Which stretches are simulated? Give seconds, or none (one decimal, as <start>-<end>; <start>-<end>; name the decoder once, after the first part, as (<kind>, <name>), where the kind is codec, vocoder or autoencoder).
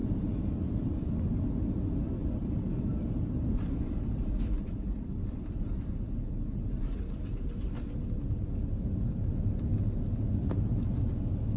2.2-7.2 (vocoder, BigVGAN v2)